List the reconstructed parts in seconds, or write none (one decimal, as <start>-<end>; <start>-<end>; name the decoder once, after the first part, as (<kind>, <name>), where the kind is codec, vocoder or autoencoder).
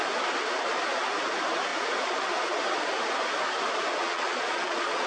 3.9-5.1 (vocoder, Vocos)